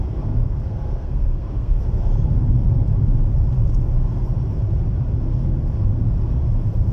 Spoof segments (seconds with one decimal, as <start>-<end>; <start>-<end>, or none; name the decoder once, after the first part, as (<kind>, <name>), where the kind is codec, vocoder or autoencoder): 0.4-1.8 (codec, SNAC)